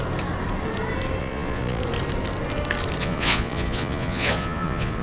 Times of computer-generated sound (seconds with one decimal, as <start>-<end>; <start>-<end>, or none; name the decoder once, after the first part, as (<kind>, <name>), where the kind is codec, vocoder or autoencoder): 1.2-1.8 (vocoder, Vocos); 3.0-5.0